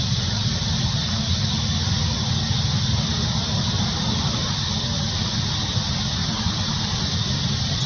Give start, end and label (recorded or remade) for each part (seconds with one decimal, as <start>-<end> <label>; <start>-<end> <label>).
0.0-6.2 recorded; 6.2-6.7 remade; 6.7-7.9 recorded